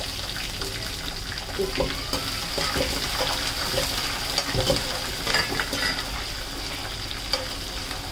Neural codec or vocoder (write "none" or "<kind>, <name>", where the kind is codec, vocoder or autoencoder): none